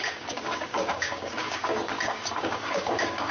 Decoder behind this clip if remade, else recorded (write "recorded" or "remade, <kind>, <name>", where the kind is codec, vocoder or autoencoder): remade, codec, DAC